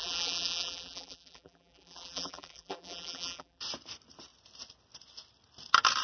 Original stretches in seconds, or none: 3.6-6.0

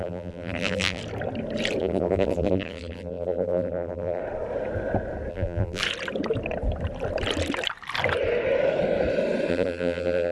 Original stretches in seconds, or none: 1.0-1.8; 4.2-5.3; 5.8-9.5

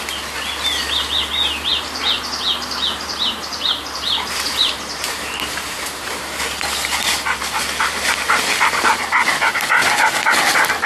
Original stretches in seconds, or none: 0.0-1.7; 6.4-10.9

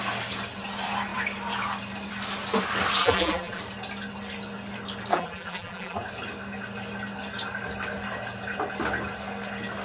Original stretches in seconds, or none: 0.0-3.0; 3.6-5.1; 6.0-9.8

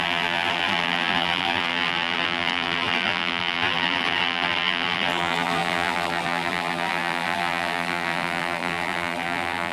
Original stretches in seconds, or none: none

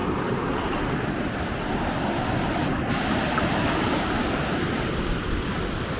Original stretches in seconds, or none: 0.0-0.9

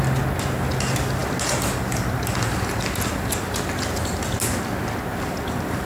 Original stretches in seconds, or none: 0.0-5.8

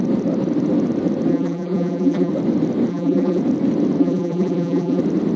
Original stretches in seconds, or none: 0.0-1.3; 2.3-2.9; 3.4-4.0; 5.0-5.4